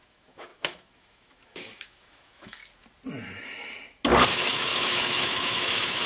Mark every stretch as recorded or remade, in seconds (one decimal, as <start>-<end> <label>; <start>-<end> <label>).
0.0-2.6 remade; 2.6-4.3 recorded; 4.3-6.1 remade